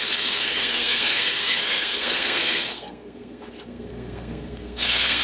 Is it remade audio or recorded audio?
remade